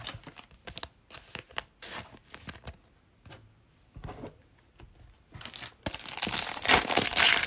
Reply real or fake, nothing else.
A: real